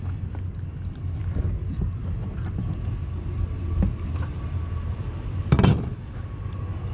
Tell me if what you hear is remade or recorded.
recorded